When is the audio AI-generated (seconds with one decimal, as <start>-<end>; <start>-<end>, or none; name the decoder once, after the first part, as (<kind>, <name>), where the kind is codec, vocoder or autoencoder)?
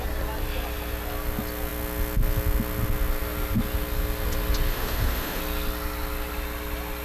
4.7-5.4 (autoencoder, DAC-VAE)